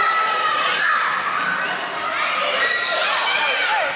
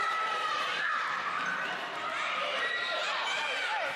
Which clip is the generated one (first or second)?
second